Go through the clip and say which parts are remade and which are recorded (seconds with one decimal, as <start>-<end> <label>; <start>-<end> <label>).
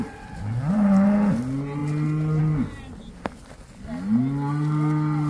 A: 0.0-5.3 recorded